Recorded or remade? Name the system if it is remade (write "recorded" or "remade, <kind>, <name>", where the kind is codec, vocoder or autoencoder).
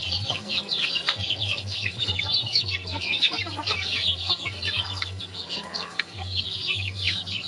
remade, codec, SNAC